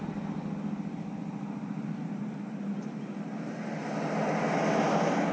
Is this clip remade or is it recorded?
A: recorded